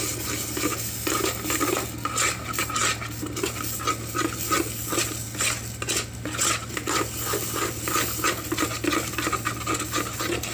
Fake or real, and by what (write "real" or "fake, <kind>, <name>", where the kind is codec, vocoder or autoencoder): real